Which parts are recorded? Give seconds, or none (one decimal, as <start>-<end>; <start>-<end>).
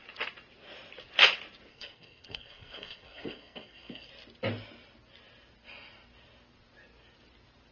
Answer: 0.0-1.7; 4.1-7.7